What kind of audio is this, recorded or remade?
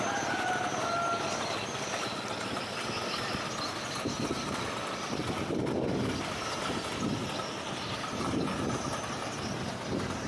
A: recorded